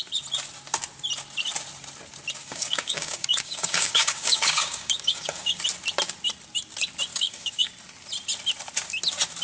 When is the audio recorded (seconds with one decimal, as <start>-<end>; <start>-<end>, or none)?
0.0-2.4; 5.6-7.1; 7.7-9.4